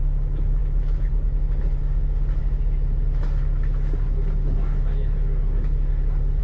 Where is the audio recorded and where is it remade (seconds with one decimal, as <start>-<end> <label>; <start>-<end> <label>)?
0.0-6.4 recorded